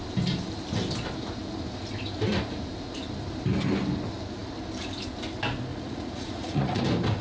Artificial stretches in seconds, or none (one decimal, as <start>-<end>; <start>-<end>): 5.7-6.8